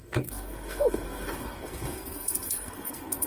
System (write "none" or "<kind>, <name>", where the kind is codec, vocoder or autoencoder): codec, SNAC